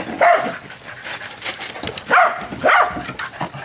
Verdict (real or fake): real